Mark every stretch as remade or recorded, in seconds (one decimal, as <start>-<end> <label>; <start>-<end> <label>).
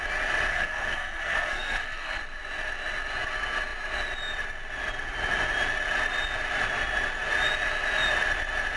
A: 0.0-0.5 recorded; 0.5-2.2 remade; 2.2-8.8 recorded